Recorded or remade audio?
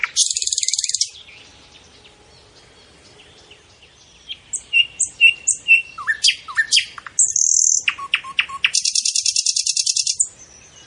recorded